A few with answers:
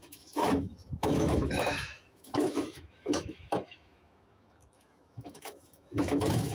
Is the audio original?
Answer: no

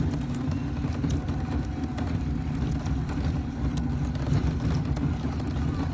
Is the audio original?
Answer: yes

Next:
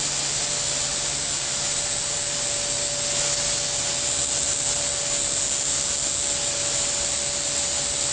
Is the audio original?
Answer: yes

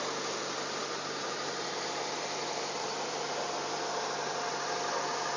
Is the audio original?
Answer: yes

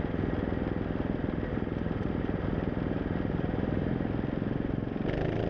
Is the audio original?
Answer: yes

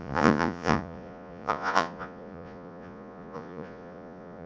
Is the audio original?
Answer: no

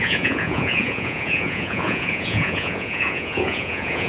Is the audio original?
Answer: no